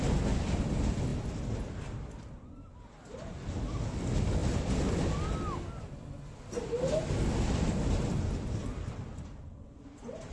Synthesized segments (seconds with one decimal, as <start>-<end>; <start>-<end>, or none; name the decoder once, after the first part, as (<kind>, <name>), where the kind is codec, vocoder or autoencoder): 1.1-3.3 (vocoder, BigVGAN v2); 4.4-4.9; 8.6-10.3